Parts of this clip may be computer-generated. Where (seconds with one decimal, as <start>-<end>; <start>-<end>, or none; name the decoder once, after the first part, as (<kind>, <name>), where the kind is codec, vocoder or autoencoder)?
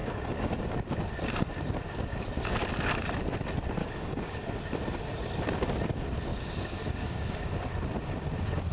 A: 0.0-0.6 (codec, DAC); 3.8-4.4; 6.3-7.5